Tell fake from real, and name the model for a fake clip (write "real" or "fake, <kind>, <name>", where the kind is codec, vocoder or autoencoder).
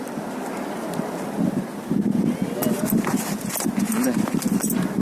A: real